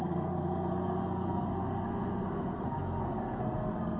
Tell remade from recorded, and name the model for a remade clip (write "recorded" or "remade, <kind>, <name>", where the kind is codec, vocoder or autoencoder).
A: remade, codec, SNAC